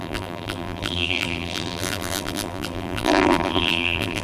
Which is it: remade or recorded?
remade